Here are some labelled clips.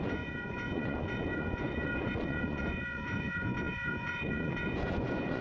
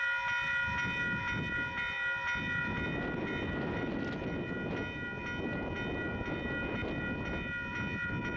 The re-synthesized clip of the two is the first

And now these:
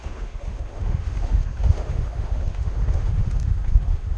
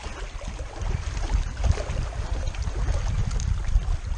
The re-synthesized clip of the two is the first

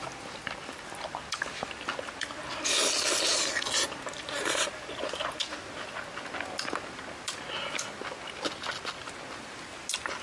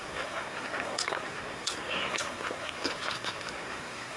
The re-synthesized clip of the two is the second